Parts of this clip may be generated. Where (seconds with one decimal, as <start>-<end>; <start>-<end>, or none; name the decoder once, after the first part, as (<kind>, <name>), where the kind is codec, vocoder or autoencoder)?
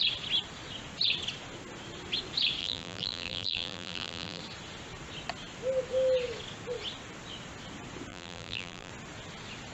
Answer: 2.6-4.4 (vocoder, BigVGAN v2); 8.1-8.9